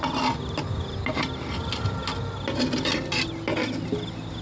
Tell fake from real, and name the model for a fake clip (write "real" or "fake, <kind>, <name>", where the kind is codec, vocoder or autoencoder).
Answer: real